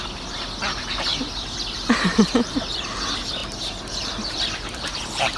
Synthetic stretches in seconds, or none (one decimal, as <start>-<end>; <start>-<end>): 0.0-3.4; 4.3-5.4